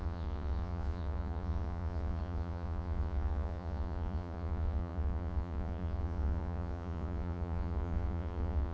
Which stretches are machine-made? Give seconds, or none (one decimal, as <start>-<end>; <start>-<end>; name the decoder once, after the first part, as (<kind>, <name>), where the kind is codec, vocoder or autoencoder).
0.0-8.7 (vocoder, Vocos)